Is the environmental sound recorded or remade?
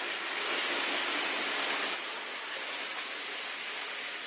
recorded